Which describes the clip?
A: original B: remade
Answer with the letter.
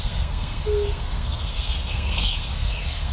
B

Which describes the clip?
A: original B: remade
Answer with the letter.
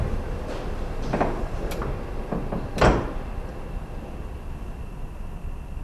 A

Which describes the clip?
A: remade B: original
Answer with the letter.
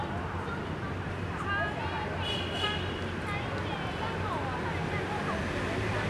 B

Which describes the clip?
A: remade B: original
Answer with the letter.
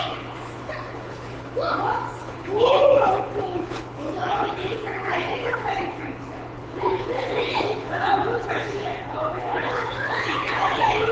A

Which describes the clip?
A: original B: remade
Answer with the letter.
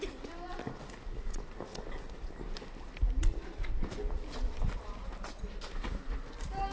A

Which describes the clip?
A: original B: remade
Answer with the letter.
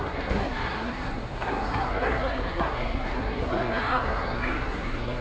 B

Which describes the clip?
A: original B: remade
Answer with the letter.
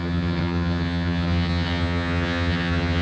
B